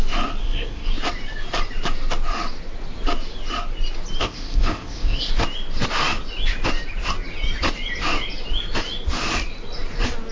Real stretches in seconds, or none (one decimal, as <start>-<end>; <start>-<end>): 0.0-0.4; 0.9-4.2; 5.3-10.3